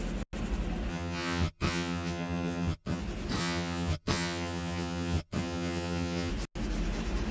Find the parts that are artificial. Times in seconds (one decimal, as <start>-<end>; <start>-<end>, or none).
0.9-3.0; 3.4-6.3

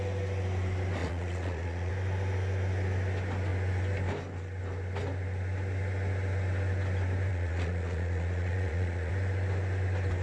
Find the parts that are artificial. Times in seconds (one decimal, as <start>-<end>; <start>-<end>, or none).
1.0-1.9; 7.3-9.1

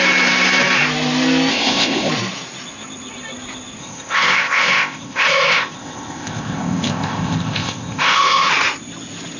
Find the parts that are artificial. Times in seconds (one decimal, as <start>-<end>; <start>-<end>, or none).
1.5-2.1; 3.8-8.5

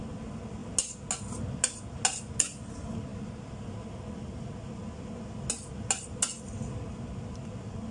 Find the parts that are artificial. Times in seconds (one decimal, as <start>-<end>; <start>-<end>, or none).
none